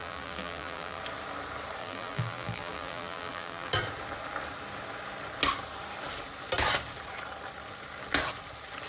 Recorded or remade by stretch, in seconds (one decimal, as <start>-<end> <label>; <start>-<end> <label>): 0.0-1.0 remade; 1.0-1.8 recorded; 1.8-3.7 remade; 3.7-8.9 recorded